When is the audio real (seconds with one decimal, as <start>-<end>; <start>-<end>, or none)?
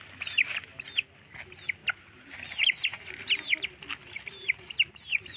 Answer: 0.0-5.4